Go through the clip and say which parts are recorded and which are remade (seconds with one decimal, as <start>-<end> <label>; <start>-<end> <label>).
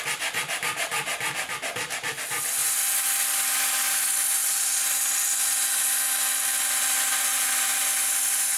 0.0-8.6 recorded